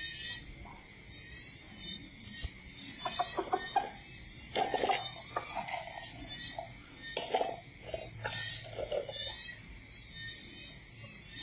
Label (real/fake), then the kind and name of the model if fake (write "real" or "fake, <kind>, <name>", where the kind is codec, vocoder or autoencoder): real